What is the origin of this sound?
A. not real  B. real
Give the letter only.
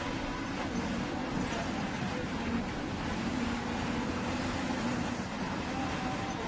A